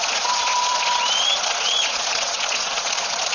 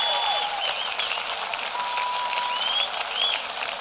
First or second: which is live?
second